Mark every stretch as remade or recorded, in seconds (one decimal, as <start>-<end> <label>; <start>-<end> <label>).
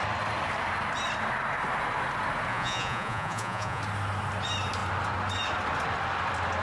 0.0-2.5 recorded; 2.5-3.8 remade; 3.8-6.6 recorded